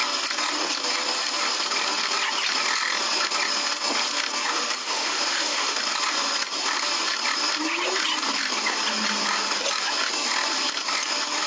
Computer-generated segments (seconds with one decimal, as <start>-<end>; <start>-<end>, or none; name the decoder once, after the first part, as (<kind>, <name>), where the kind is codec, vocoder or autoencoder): 4.8-5.8 (autoencoder, DAC-VAE)